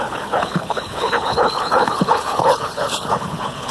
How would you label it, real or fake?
fake